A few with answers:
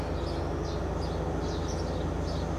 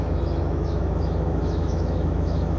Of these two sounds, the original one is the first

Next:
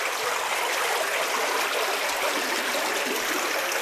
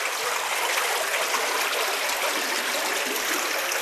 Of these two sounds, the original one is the second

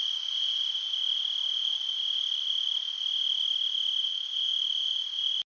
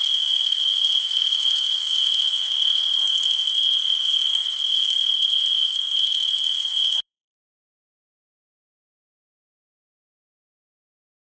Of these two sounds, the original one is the first